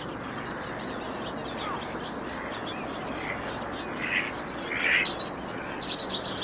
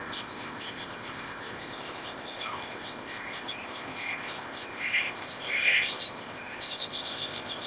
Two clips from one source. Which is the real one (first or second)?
first